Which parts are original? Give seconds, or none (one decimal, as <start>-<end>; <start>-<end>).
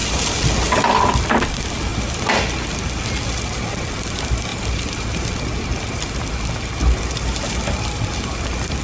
0.9-1.9; 3.4-4.5